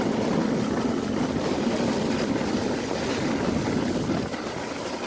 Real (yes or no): yes